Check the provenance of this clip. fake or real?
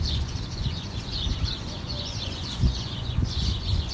fake